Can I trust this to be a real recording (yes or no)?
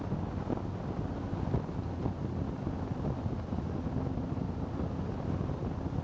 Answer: yes